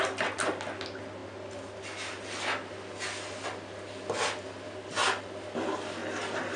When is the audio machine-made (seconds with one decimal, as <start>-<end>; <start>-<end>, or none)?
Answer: none